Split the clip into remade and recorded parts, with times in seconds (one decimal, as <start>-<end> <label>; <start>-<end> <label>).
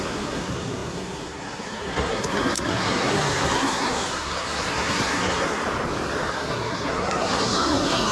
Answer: 0.0-5.6 remade; 5.6-6.3 recorded; 6.3-8.1 remade